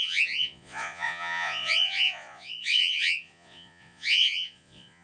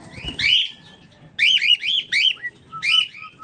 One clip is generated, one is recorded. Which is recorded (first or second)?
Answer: second